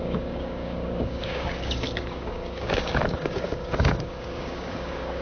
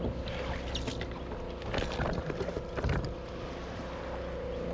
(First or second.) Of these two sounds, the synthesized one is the first